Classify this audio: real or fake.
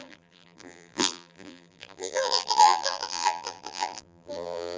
fake